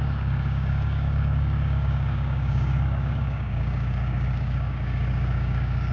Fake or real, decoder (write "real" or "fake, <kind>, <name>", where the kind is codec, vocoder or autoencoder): fake, codec, DAC